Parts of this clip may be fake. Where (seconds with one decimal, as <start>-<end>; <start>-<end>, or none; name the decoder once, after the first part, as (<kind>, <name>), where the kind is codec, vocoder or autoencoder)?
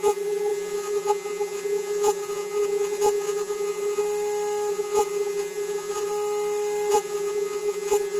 0.0-4.0 (vocoder, Vocos); 4.7-6.1; 6.9-8.2